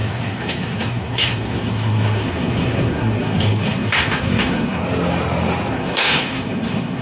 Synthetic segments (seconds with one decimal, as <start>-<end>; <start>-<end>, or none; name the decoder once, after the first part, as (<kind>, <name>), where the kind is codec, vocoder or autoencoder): 0.0-4.8 (codec, SNAC); 5.7-7.0